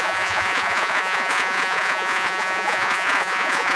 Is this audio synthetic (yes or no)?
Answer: yes